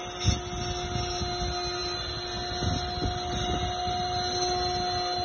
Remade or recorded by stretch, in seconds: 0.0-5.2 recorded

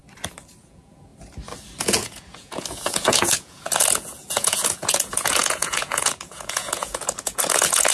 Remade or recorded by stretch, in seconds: 0.0-0.6 recorded; 0.6-1.1 remade; 1.1-1.8 recorded; 1.8-7.9 remade

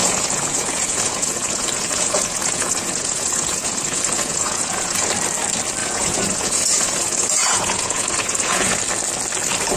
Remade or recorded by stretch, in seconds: 0.0-5.1 remade; 5.1-5.8 recorded; 5.8-8.8 remade; 8.8-9.8 recorded